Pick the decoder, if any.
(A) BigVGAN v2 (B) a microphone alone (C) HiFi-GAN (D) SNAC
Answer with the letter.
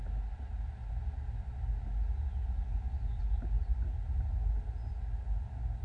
B